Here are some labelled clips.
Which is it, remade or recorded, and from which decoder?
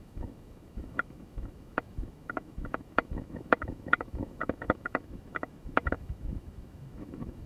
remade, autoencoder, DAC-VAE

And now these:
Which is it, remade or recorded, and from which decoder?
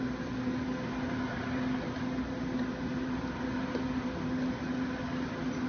recorded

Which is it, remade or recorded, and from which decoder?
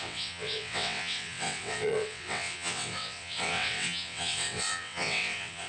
remade, vocoder, WaveNeXt